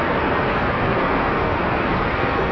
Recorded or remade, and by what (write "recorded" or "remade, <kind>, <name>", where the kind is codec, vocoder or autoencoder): remade, codec, SNAC